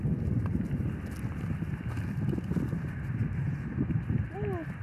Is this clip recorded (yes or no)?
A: yes